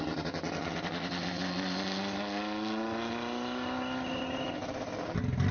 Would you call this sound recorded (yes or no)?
yes